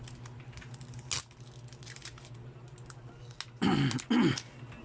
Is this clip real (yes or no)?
yes